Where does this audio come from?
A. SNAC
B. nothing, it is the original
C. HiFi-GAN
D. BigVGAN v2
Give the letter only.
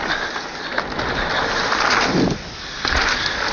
B